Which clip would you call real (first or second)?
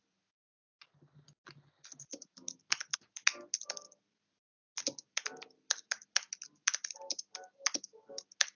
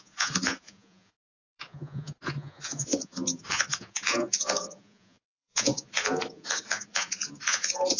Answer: first